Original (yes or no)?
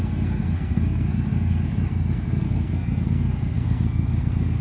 no